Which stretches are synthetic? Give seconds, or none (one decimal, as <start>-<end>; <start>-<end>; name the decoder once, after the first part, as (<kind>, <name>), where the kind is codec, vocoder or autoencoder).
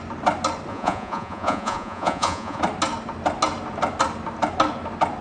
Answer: 0.7-2.6 (vocoder, Vocos)